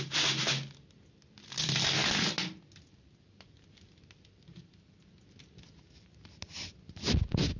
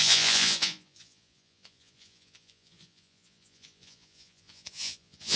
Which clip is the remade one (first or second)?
second